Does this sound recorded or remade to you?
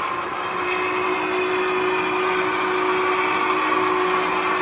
recorded